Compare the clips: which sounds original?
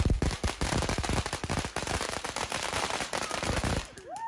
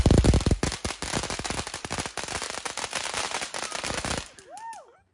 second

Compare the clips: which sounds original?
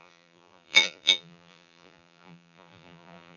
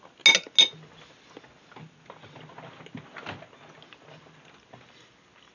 second